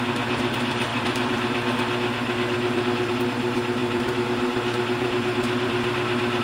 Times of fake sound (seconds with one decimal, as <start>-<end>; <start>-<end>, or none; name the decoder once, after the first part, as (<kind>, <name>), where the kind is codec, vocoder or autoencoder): 0.9-3.1 (vocoder, BigVGAN v2); 3.8-6.4